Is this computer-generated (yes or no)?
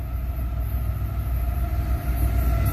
no